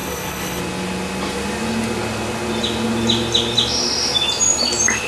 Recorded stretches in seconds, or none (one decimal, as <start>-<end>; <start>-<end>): 0.6-5.1

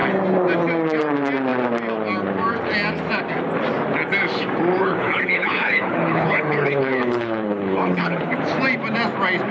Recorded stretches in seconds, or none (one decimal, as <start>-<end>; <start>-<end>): 0.0-4.8; 8.4-9.5

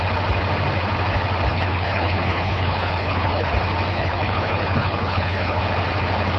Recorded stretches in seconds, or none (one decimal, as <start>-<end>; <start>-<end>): 0.0-1.5; 3.5-3.9; 5.6-6.4

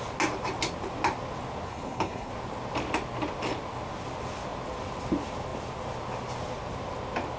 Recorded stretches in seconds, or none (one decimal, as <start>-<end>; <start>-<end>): 0.0-1.7; 2.3-7.4

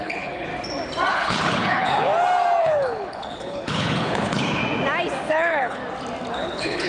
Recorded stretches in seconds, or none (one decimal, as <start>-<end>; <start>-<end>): 0.5-1.1; 2.1-2.6; 4.6-5.3; 5.8-6.3